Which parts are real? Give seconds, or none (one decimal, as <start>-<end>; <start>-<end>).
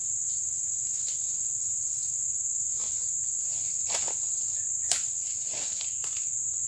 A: 0.0-6.7